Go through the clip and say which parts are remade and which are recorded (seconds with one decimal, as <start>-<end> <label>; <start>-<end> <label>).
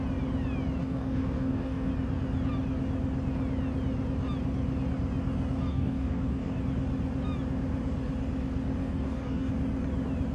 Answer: 0.0-0.8 recorded; 0.8-1.9 remade; 1.9-5.7 recorded; 5.7-6.6 remade; 6.6-8.8 recorded; 8.8-9.5 remade; 9.5-10.3 recorded